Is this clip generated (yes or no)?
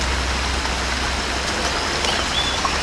no